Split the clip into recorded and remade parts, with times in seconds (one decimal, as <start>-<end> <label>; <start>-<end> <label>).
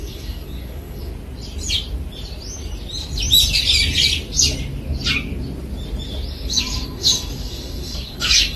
0.0-1.1 remade; 1.1-6.3 recorded; 6.3-8.6 remade